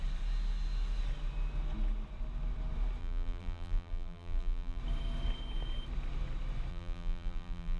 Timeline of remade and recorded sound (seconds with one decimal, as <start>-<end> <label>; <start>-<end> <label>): 0.0-3.0 recorded; 3.0-4.8 remade; 4.8-6.7 recorded; 6.7-7.8 remade